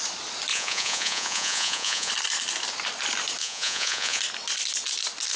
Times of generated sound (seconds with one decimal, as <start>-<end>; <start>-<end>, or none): 0.5-2.1; 3.4-4.2